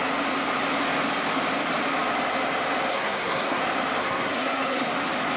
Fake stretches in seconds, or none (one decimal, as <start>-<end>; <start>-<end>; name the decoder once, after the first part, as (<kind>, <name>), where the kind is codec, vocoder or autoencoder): 2.9-3.6 (codec, SNAC); 4.0-4.9